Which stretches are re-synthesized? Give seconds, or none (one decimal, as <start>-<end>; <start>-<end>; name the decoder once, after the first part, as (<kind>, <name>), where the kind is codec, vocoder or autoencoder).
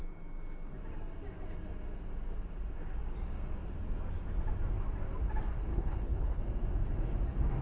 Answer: 5.7-6.4 (codec, HILCodec)